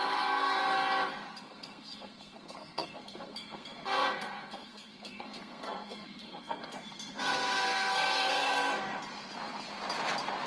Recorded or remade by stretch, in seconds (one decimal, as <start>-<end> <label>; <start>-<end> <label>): 0.0-0.6 remade; 0.6-1.4 recorded; 1.4-8.9 remade; 8.9-10.5 recorded

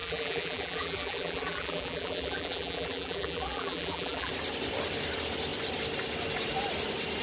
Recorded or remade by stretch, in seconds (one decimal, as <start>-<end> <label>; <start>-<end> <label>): 0.0-4.3 remade; 4.3-7.2 recorded